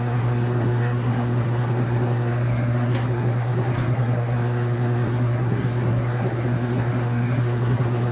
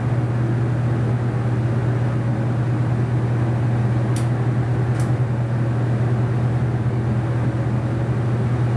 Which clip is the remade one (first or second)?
first